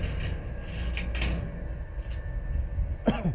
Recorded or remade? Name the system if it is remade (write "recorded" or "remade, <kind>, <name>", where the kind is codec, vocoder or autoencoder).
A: recorded